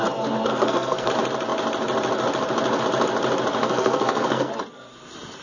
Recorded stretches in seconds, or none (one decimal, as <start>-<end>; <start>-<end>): 0.0-0.5; 1.1-3.6; 4.5-5.4